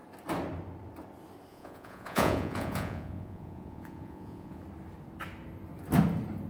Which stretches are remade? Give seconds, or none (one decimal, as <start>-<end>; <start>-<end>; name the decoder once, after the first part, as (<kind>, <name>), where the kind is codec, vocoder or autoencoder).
1.5-4.6 (vocoder, Vocos)